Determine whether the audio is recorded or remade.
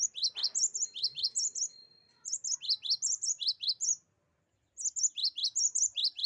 recorded